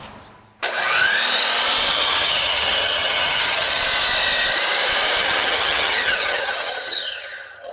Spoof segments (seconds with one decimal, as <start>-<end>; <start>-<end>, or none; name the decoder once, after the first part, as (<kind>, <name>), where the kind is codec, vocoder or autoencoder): 1.9-3.8 (vocoder, HiFi-GAN); 5.2-7.7